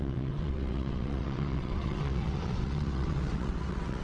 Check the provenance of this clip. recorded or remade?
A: remade